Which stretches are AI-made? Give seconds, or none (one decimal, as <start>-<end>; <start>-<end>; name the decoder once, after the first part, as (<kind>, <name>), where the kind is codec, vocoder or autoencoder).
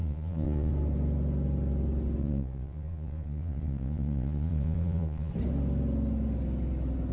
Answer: 0.0-0.7 (vocoder, Vocos); 2.2-5.3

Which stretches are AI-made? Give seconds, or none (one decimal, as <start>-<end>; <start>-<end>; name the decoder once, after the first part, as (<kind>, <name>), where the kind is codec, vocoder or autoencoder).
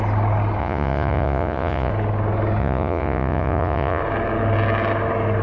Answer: 0.6-1.9 (vocoder, Vocos); 2.6-4.0